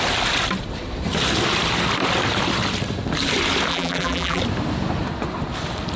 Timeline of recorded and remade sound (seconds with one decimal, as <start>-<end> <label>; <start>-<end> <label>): 0.0-3.7 recorded; 3.7-4.4 remade; 4.4-6.0 recorded